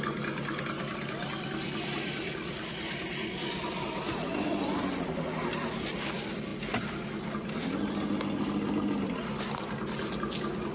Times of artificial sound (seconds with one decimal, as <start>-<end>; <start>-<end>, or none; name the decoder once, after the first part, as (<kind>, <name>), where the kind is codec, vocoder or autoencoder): none